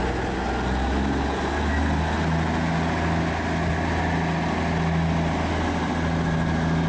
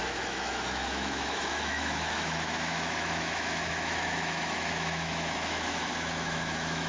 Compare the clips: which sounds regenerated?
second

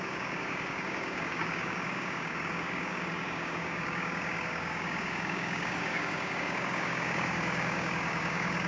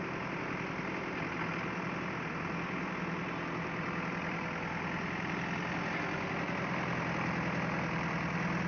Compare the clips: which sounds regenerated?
first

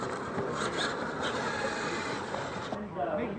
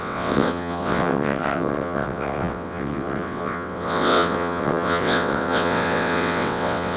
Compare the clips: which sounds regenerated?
second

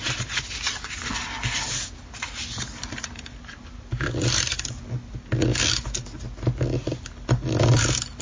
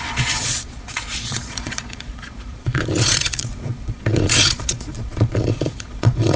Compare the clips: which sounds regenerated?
second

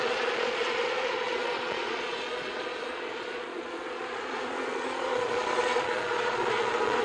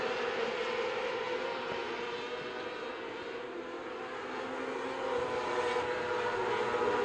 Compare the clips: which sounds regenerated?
first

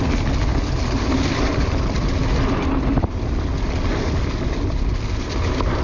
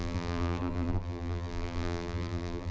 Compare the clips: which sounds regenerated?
second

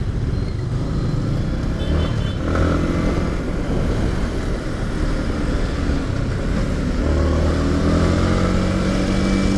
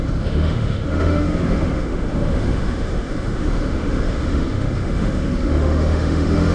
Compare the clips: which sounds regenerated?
second